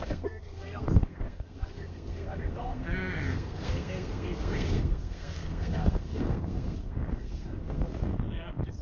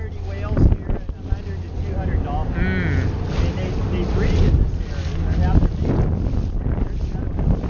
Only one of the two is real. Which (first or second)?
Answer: second